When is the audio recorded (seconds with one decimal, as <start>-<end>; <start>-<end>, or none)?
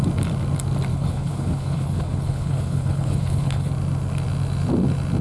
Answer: 0.0-0.9; 3.7-5.2